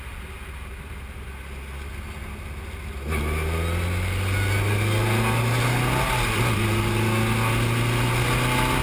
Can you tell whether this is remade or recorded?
recorded